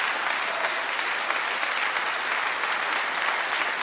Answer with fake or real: real